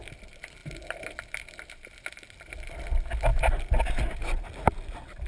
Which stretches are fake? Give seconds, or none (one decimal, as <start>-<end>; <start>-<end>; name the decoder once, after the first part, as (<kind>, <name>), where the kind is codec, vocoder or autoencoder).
none